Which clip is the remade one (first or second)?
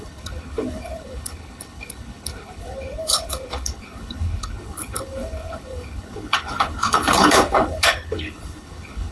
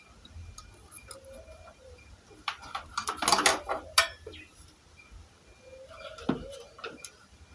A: first